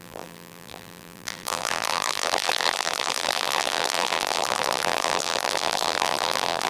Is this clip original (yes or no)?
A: no